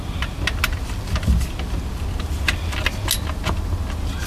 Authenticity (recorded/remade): recorded